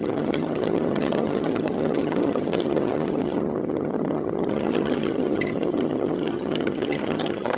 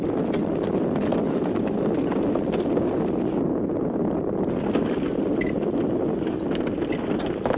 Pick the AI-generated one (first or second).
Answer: first